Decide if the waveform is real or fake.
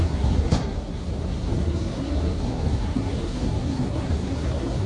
fake